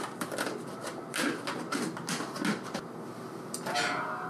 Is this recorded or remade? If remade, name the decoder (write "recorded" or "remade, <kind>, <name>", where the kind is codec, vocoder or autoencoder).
recorded